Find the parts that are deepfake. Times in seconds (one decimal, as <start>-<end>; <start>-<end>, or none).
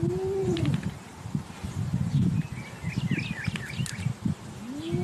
0.4-1.5